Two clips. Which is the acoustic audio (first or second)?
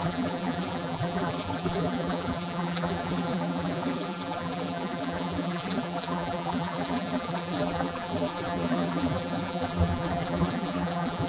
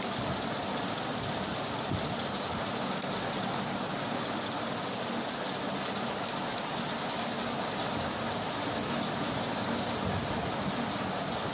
second